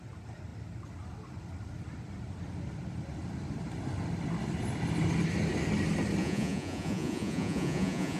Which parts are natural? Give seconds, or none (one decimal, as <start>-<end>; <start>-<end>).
0.0-6.2